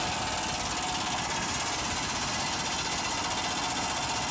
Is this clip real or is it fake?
real